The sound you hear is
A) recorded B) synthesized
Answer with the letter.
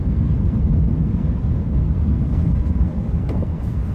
B